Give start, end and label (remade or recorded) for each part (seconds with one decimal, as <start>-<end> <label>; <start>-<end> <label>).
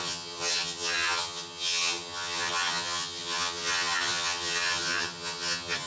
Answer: 0.0-5.9 remade